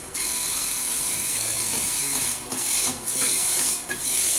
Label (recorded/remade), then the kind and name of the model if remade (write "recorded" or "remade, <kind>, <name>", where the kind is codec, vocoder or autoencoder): remade, codec, SNAC